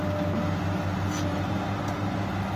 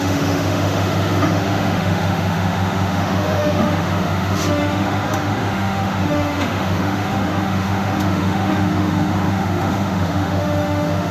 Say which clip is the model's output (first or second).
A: second